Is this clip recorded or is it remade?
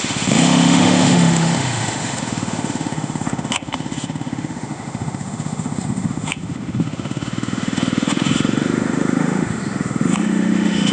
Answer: remade